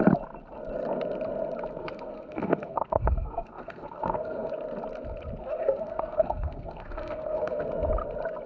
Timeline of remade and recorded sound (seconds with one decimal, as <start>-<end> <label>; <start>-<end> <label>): 0.0-1.8 recorded; 1.8-4.5 remade; 4.5-5.4 recorded; 5.4-7.7 remade; 7.7-8.5 recorded